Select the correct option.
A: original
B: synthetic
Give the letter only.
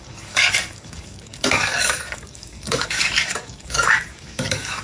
B